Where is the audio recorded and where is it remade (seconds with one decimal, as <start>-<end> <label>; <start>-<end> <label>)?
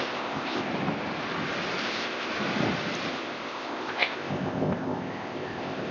0.0-0.7 remade; 0.7-1.8 recorded; 1.8-2.3 remade; 2.3-3.1 recorded; 3.1-5.9 remade